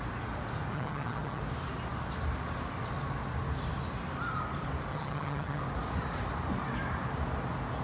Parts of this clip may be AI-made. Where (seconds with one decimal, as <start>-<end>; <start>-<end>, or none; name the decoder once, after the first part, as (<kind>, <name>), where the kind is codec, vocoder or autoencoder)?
0.7-1.4 (vocoder, HiFi-GAN); 4.9-5.6